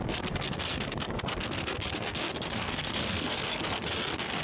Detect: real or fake fake